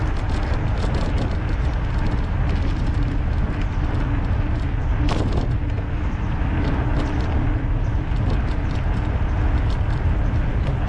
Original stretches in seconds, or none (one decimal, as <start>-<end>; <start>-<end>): 0.0-10.9

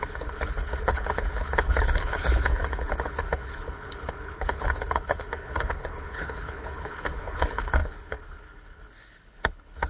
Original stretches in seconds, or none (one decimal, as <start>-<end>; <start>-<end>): none

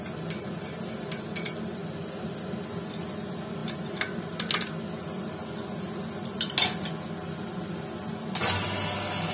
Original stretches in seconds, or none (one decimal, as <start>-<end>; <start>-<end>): 0.0-9.3

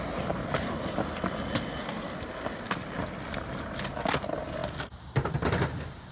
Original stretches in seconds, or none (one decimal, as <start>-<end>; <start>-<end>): 0.0-6.1

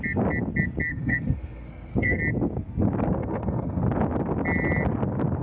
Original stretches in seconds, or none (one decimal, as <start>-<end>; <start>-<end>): 0.0-0.9; 2.2-3.2; 3.8-5.4

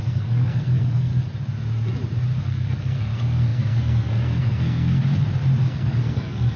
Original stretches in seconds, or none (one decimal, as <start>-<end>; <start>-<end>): 1.1-2.4; 5.0-5.6

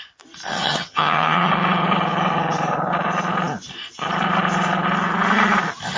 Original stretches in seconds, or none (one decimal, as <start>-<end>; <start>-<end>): 0.0-0.5; 1.5-6.0

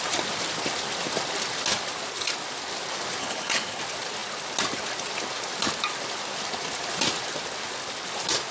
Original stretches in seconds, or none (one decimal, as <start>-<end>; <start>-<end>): 0.0-3.2; 3.8-8.5